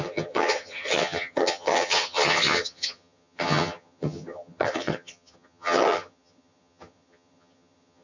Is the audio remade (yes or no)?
yes